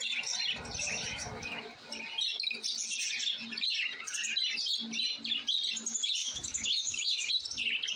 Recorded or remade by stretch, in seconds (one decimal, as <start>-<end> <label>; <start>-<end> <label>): 0.0-1.1 recorded; 1.1-1.7 remade; 1.7-6.2 recorded; 6.2-7.3 remade; 7.3-8.0 recorded